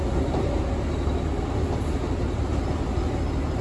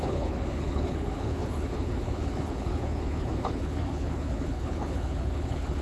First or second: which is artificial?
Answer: second